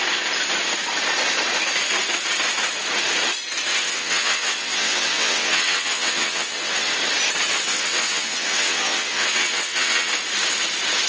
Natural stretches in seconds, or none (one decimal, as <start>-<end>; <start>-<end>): 0.0-3.7; 6.9-7.7; 10.1-11.1

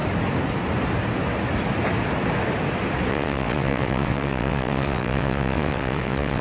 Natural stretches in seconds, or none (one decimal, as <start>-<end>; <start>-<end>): 0.0-3.1

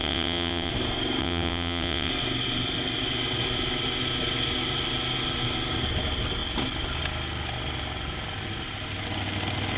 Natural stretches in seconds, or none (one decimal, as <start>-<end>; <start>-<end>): 0.7-1.2; 2.1-9.8